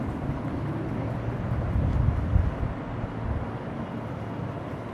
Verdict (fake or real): real